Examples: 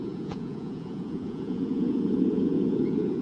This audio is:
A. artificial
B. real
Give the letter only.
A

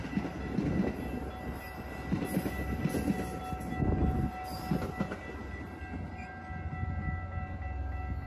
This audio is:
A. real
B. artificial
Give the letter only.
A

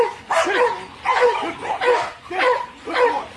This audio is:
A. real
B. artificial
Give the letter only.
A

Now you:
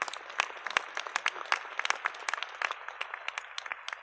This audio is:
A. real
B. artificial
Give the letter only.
A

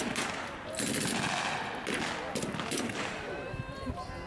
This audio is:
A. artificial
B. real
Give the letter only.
B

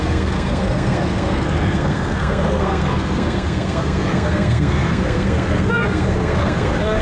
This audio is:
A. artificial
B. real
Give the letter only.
A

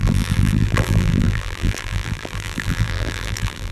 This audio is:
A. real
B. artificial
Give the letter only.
B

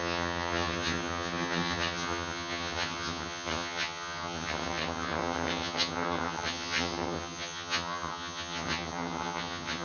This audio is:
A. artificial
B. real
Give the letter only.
A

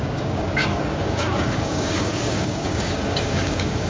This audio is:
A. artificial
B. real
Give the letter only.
A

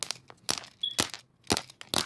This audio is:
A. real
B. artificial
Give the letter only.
A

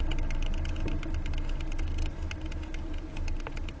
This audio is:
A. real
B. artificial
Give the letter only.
A